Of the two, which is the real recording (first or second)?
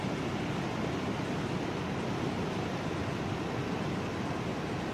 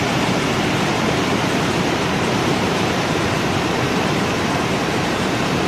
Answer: first